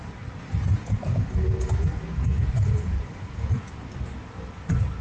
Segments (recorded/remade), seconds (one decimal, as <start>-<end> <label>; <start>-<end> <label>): 0.0-0.7 recorded; 0.7-3.7 remade; 3.7-5.0 recorded